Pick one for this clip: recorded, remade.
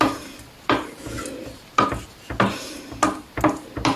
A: recorded